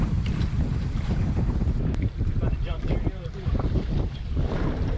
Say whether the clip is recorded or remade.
remade